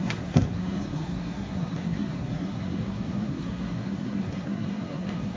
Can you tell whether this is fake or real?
fake